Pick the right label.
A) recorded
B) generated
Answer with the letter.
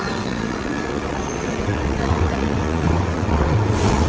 B